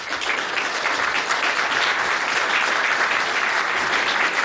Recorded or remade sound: remade